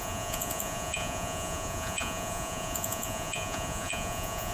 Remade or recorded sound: remade